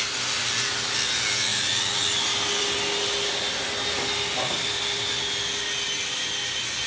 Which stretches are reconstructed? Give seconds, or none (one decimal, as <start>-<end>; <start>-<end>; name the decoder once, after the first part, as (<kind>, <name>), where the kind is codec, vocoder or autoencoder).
none